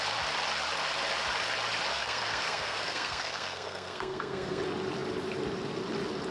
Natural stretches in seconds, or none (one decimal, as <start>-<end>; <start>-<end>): 0.0-1.9; 4.6-6.3